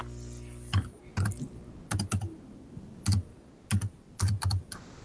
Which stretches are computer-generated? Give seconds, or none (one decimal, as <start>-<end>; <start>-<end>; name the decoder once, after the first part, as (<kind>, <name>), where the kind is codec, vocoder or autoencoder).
none